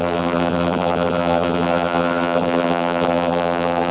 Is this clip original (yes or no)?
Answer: no